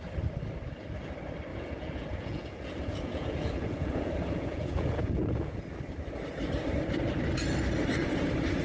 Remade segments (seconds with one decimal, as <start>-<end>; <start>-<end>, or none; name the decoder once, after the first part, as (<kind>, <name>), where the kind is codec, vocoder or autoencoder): 1.5-5.6 (vocoder, Vocos)